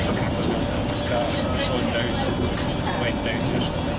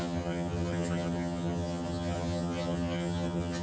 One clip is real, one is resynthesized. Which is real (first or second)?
first